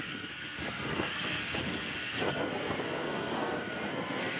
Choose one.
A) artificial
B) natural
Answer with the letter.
A